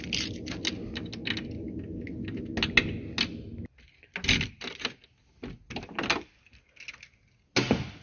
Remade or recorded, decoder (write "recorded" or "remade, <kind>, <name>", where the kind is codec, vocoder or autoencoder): recorded